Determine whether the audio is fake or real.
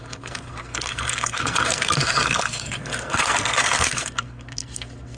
fake